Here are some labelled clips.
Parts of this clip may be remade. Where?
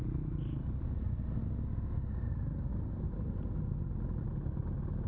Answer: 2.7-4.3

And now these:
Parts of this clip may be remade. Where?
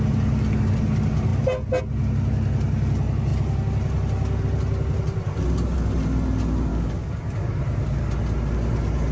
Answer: 6.7-7.6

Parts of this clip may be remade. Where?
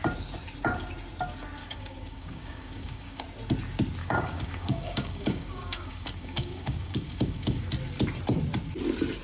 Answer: 1.6-3.2; 4.0-7.6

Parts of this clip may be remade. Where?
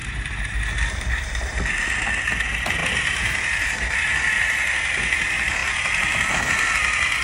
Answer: 0.0-1.6; 2.8-3.9